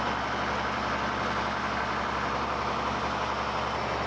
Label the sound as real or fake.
real